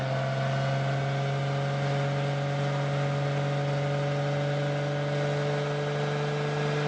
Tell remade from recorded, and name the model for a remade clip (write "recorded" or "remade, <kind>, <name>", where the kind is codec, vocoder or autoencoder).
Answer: recorded